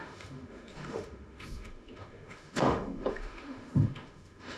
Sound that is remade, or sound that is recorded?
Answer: remade